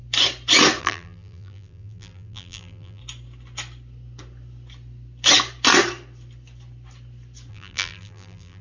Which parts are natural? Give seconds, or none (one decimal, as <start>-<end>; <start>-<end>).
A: 0.0-0.8; 3.0-7.5